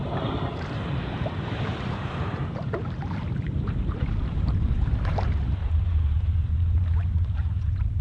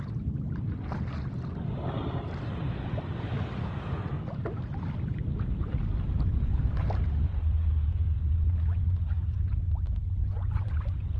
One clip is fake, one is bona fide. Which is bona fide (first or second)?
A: second